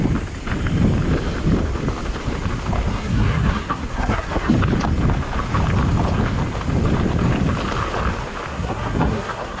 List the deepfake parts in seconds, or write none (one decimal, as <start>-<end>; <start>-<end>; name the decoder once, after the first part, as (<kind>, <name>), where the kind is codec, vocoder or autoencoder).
2.9-4.5 (codec, SNAC); 8.5-9.6